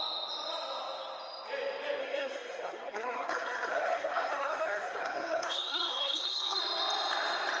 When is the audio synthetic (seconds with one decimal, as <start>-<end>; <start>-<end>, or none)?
2.0-6.6